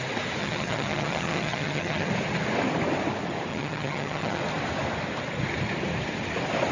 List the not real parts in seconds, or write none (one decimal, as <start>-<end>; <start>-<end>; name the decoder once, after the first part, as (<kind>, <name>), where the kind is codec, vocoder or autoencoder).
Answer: 0.4-2.1 (vocoder, HiFi-GAN); 3.5-4.4